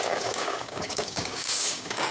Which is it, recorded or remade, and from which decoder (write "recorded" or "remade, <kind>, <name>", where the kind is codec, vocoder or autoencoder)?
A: remade, codec, DAC